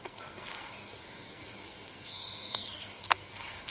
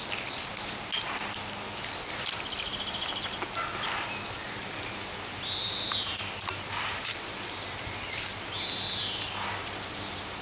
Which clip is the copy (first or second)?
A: first